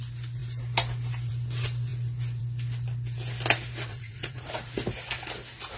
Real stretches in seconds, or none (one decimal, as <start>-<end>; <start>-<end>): 0.0-3.9; 4.5-5.8